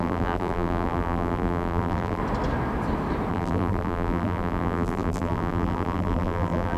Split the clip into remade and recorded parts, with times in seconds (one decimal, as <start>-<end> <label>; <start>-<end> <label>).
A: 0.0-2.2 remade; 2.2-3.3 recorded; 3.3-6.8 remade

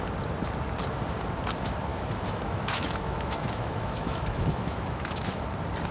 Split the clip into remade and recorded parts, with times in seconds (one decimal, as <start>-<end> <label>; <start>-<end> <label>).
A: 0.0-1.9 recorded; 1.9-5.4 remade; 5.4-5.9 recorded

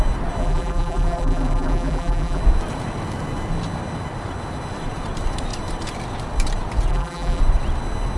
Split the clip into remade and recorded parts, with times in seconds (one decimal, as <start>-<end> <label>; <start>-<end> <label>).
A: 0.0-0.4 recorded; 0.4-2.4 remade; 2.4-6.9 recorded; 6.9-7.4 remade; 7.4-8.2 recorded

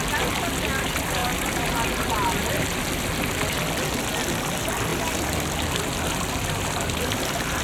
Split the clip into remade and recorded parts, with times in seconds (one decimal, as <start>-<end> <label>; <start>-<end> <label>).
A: 0.0-7.6 recorded

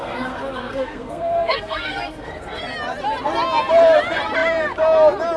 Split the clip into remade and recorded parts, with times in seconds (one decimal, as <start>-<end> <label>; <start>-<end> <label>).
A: 0.0-2.6 remade; 2.6-5.4 recorded